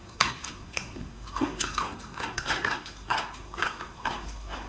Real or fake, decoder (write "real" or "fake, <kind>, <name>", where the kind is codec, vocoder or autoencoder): fake, codec, SNAC